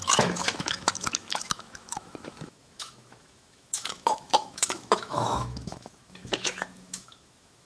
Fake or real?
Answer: fake